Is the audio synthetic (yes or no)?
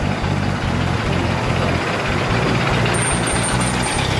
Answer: no